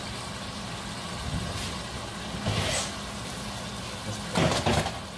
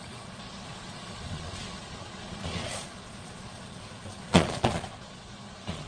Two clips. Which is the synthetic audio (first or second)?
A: second